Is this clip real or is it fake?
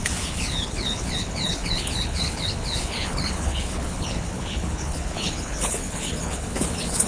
fake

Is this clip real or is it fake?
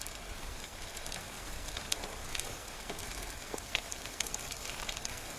fake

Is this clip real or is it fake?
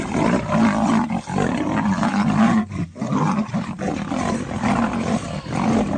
real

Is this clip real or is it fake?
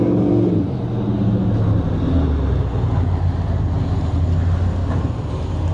real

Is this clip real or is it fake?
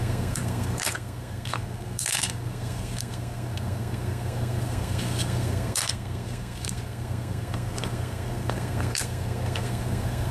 fake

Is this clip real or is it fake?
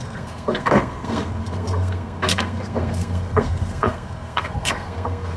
fake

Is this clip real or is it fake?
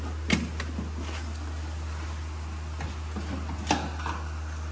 real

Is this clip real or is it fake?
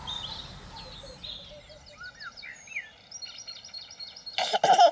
real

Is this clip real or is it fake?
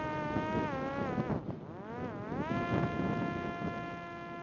real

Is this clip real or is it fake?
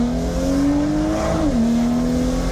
real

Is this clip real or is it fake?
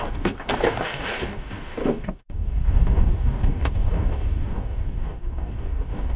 fake